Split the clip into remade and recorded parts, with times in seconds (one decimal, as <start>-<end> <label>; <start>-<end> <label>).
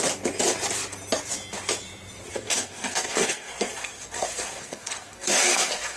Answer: 0.0-2.3 recorded; 2.3-6.0 remade